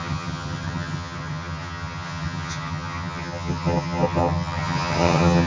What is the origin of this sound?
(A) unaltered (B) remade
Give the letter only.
B